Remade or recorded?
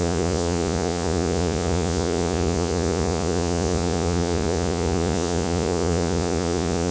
remade